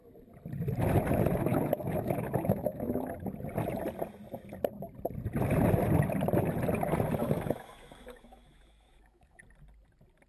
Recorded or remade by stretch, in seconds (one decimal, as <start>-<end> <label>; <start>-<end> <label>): 0.0-1.5 recorded; 1.5-3.0 remade; 3.0-7.2 recorded; 7.2-9.4 remade; 9.4-10.3 recorded